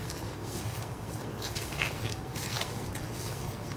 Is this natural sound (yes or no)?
no